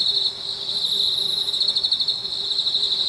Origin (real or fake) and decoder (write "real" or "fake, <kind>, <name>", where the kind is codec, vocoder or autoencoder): real